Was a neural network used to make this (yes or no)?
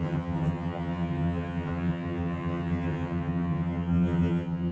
yes